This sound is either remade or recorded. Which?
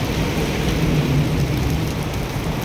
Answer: recorded